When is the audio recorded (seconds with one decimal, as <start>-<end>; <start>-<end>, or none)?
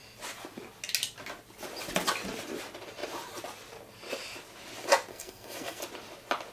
0.0-5.1; 5.8-6.5